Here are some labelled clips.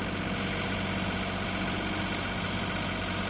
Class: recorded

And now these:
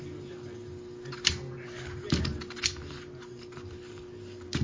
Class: recorded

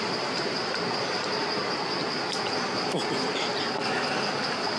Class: recorded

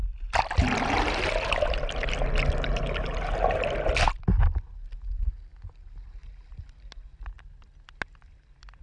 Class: recorded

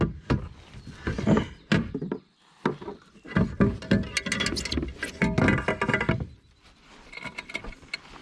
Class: recorded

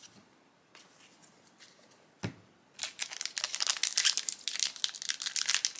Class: recorded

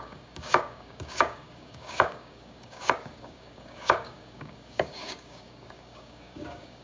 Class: remade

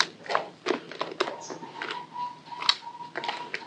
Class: recorded